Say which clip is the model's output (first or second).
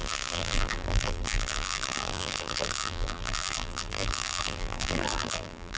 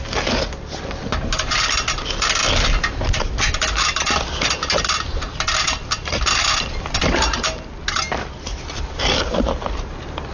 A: first